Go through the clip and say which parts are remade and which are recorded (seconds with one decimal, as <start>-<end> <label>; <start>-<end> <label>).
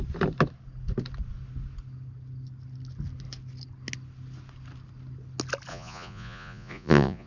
0.0-5.7 recorded; 5.7-7.3 remade